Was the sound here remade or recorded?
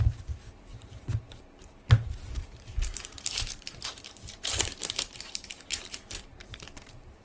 remade